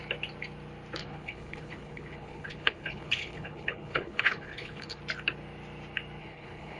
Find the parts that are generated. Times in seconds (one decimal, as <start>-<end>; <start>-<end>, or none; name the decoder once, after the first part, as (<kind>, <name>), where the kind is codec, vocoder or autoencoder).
1.0-5.0 (codec, HILCodec); 6.2-6.8